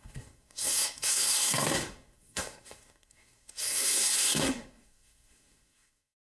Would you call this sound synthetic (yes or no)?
yes